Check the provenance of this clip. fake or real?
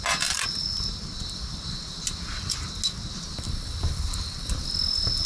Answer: real